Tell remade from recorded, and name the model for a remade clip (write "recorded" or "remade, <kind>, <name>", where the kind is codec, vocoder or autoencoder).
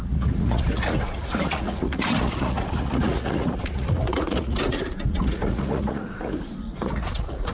remade, vocoder, Vocos